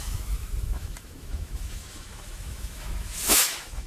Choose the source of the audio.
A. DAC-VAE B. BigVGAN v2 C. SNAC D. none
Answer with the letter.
A